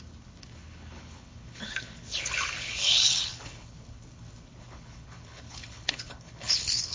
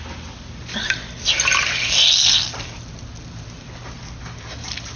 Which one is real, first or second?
second